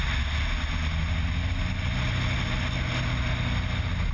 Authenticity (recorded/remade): recorded